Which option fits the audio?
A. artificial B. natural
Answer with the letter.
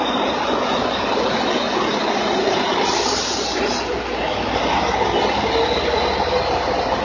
B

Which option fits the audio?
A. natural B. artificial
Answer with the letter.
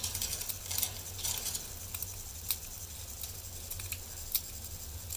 A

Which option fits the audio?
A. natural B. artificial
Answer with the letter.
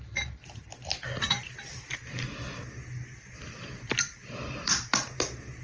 A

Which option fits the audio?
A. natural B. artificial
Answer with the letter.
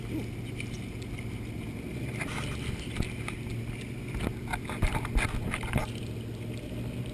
A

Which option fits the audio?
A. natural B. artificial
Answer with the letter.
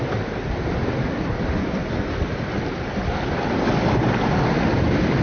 A